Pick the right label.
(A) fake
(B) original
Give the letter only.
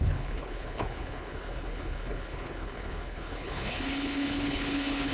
A